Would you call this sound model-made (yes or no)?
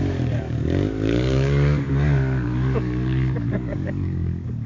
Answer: yes